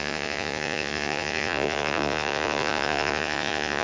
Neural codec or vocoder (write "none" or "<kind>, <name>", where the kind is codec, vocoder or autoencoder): vocoder, Vocos